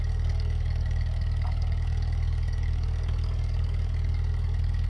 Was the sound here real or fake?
fake